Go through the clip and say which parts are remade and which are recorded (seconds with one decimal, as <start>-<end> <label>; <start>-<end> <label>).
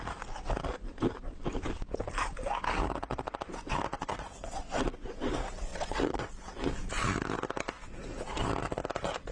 0.0-4.1 recorded; 4.1-5.3 remade; 5.3-5.7 recorded; 5.7-6.3 remade; 6.3-9.3 recorded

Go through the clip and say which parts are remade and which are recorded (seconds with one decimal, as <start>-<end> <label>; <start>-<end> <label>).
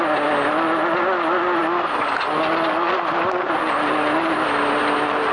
0.0-5.3 recorded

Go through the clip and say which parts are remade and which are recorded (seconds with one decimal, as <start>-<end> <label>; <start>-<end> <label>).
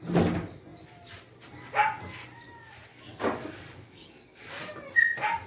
0.0-2.9 recorded; 2.9-4.5 remade; 4.5-5.5 recorded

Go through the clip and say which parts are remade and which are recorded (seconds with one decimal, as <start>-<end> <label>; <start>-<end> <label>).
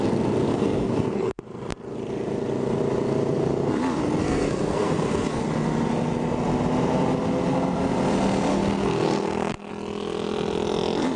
0.0-0.5 recorded; 0.5-1.4 remade; 1.4-4.2 recorded; 4.2-5.4 remade; 5.4-8.5 recorded; 8.5-9.7 remade; 9.7-11.2 recorded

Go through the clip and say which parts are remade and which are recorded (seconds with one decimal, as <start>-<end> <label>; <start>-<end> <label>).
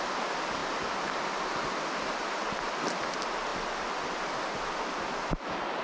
0.0-5.8 recorded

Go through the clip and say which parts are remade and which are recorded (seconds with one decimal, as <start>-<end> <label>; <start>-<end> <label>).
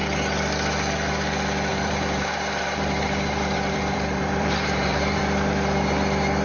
0.0-1.7 recorded; 1.7-5.2 remade; 5.2-6.4 recorded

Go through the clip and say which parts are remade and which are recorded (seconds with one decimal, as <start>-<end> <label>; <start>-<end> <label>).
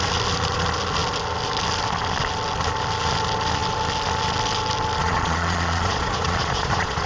0.0-5.0 recorded; 5.0-7.1 remade